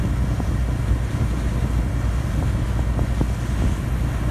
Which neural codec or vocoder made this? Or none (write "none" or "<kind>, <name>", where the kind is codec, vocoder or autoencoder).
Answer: none